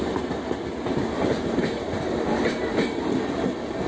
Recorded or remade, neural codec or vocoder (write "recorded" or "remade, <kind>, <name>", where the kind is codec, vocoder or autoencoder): recorded